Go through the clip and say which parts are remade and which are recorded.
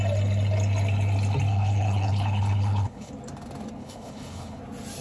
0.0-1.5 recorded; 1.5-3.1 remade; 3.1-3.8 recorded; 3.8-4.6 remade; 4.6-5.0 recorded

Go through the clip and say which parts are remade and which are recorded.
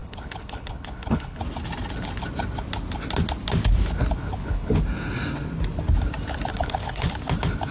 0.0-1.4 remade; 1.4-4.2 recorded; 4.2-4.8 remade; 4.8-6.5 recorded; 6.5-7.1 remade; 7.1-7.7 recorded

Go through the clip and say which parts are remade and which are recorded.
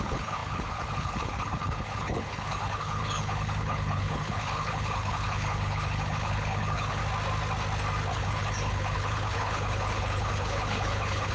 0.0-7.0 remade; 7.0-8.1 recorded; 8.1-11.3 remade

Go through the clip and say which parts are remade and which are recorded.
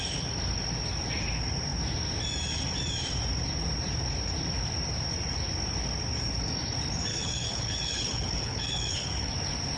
0.0-7.1 recorded; 7.1-9.3 remade; 9.3-9.8 recorded